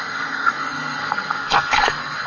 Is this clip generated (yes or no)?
yes